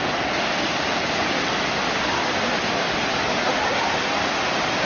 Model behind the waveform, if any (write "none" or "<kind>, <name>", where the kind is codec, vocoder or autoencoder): none